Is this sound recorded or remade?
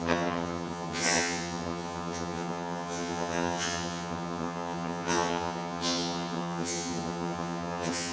remade